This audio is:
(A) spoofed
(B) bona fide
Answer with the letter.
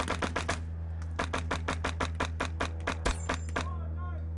B